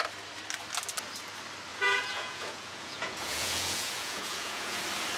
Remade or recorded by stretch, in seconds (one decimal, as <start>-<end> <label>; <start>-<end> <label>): 0.0-1.7 recorded; 1.7-4.8 remade; 4.8-5.2 recorded